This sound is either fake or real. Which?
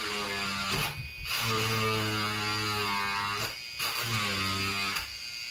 real